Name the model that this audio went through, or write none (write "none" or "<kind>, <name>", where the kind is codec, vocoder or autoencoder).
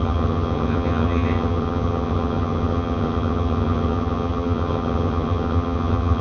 vocoder, HiFi-GAN